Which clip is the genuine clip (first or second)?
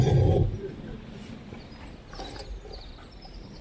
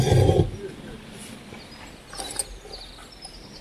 second